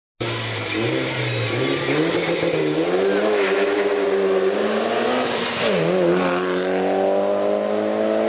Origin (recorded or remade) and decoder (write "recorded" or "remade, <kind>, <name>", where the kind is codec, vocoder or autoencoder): recorded